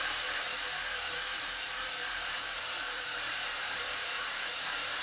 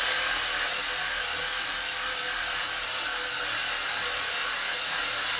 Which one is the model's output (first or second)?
first